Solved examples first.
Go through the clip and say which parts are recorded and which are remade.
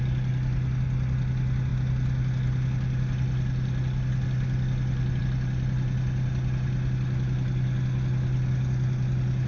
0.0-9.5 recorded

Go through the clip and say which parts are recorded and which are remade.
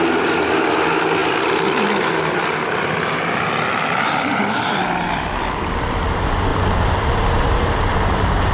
0.0-6.5 recorded; 6.5-8.5 remade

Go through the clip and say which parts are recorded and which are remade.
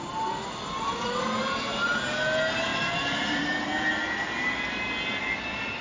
0.0-2.7 recorded; 2.7-3.4 remade; 3.4-5.8 recorded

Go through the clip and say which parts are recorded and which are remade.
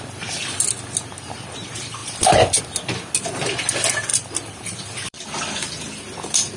0.0-2.0 recorded; 2.0-2.6 remade; 2.6-4.1 recorded; 4.1-5.7 remade; 5.7-6.6 recorded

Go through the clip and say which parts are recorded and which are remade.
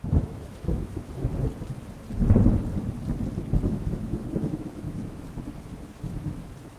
0.0-1.3 remade; 1.3-3.7 recorded; 3.7-6.8 remade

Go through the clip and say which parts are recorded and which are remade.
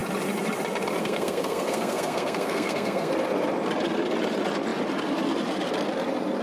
0.0-1.0 recorded; 1.0-3.1 remade; 3.1-6.4 recorded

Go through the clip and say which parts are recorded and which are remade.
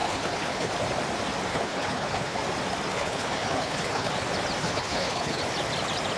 0.0-0.7 remade; 0.7-1.5 recorded; 1.5-2.4 remade; 2.4-2.9 recorded; 2.9-4.1 remade; 4.1-4.6 recorded; 4.6-5.4 remade; 5.4-6.2 recorded